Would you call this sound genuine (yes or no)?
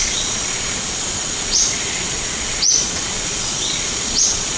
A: no